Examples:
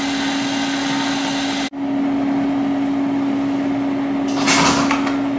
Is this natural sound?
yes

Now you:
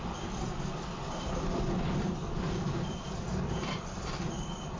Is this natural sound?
yes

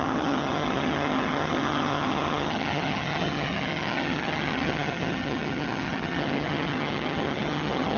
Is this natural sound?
no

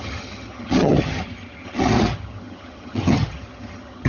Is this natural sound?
no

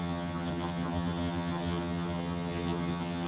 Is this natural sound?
no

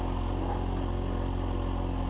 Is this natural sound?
yes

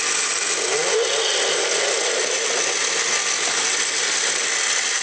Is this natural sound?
yes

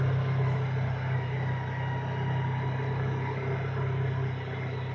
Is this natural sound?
yes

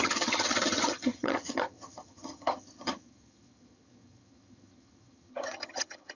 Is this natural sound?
no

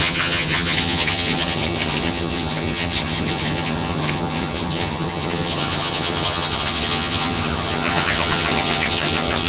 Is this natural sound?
no